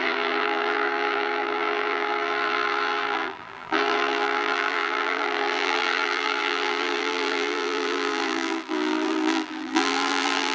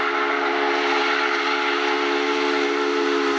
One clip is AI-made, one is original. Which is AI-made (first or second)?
first